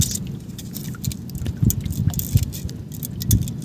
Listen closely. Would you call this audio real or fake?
real